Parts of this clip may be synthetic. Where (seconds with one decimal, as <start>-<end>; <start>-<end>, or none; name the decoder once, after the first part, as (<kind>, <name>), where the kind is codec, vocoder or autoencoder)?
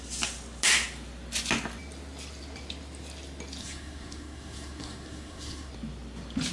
3.6-5.7 (codec, SNAC)